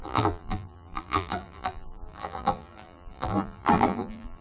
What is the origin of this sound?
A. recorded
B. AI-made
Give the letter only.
B